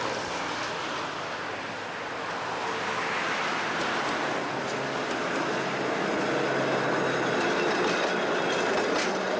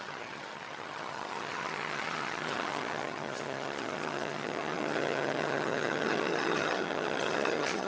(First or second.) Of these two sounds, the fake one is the second